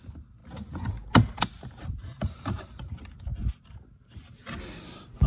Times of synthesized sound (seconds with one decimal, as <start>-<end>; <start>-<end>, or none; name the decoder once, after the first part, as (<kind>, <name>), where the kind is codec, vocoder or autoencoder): 0.4-2.9 (vocoder, BigVGAN v2)